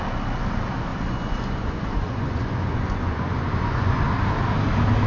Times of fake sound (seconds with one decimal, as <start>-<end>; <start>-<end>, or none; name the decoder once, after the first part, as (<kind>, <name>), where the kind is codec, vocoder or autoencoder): 0.9-4.0 (vocoder, Vocos)